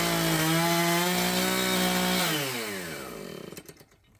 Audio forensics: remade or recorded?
recorded